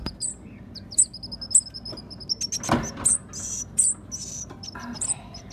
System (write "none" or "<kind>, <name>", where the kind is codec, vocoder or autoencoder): none